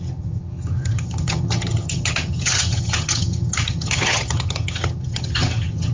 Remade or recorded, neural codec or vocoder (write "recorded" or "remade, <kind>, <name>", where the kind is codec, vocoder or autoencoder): remade, vocoder, HiFi-GAN